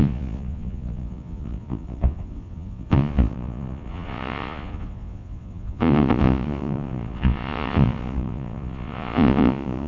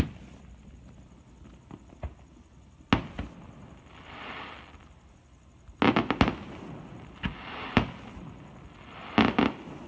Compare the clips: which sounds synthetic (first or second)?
first